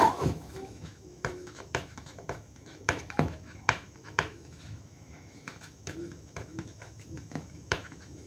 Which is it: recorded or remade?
remade